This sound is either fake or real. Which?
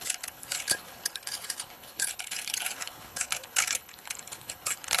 fake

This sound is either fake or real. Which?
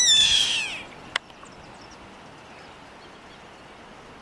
real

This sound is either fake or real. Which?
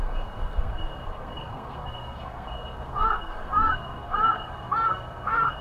fake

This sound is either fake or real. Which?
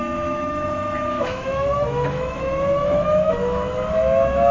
fake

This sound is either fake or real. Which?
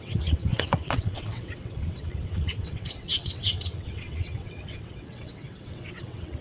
fake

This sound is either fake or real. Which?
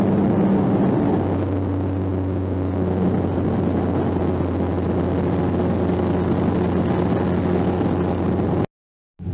real